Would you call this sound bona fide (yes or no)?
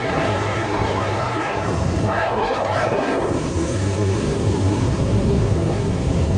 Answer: no